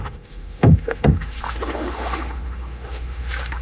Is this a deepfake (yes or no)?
yes